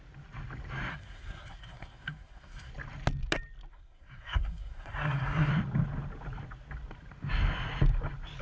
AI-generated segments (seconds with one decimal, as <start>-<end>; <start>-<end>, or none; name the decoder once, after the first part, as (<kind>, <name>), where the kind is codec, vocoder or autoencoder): 0.9-2.7 (codec, SNAC); 3.7-5.5